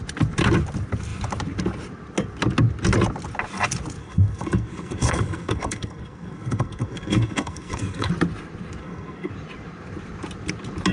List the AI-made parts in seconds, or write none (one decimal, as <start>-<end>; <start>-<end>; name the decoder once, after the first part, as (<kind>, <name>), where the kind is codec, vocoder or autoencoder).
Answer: 4.0-8.1 (codec, SNAC); 8.8-9.3